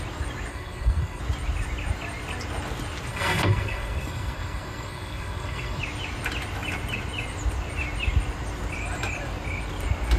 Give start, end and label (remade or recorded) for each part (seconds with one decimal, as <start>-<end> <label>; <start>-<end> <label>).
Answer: 0.0-0.5 recorded; 0.5-1.2 remade; 1.2-3.1 recorded; 3.1-5.8 remade; 5.8-10.2 recorded